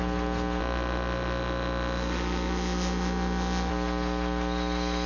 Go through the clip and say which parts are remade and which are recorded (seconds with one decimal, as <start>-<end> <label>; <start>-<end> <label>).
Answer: 0.0-0.6 recorded; 0.6-3.7 remade; 3.7-5.1 recorded